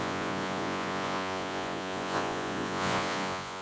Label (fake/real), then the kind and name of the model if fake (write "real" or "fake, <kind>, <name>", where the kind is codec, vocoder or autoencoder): fake, vocoder, Vocos